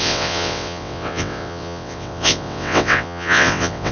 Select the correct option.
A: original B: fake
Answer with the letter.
B